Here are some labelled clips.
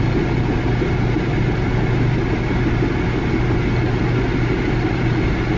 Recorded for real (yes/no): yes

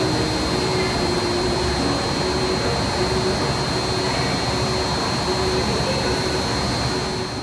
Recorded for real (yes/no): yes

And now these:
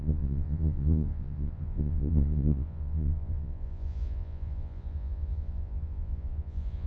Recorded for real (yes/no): no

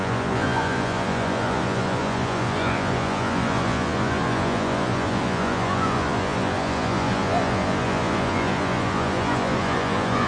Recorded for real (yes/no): no